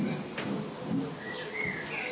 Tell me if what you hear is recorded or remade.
recorded